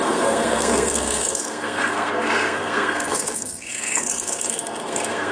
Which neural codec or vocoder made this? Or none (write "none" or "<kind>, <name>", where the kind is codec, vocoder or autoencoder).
codec, SNAC